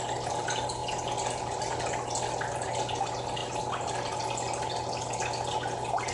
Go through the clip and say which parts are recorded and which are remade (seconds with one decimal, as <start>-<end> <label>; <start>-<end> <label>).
0.0-6.1 recorded